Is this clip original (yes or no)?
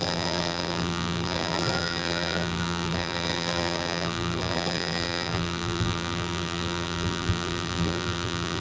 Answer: no